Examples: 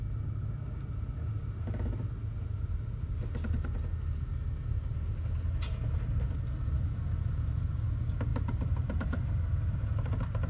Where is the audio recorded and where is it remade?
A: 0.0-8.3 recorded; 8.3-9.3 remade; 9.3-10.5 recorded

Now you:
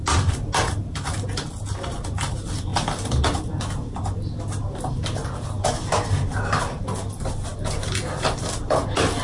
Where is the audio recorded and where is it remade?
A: 0.0-9.2 recorded

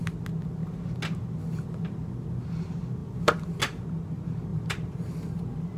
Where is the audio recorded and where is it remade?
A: 0.0-4.5 recorded; 4.5-5.3 remade; 5.3-5.8 recorded

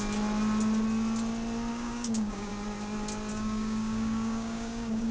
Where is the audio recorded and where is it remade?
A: 0.0-1.7 recorded; 1.7-2.5 remade; 2.5-3.3 recorded; 3.3-5.1 remade

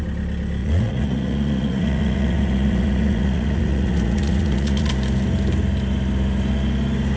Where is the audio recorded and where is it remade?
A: 0.0-0.6 recorded; 0.6-4.9 remade; 4.9-7.2 recorded